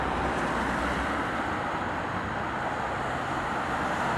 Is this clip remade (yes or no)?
no